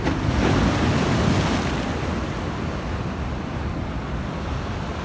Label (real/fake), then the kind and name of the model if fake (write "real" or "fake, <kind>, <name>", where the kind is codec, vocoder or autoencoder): real